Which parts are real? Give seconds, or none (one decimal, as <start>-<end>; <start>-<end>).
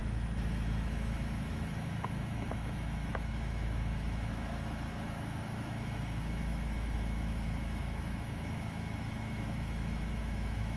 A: none